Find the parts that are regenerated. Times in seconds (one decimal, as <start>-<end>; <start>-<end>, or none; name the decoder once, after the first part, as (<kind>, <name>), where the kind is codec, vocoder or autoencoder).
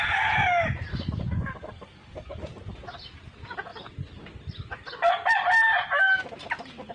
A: 0.9-2.4 (codec, DAC)